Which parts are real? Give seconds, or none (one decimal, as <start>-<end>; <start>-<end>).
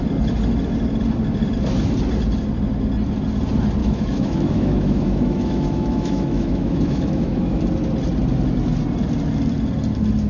0.0-3.8; 7.6-10.3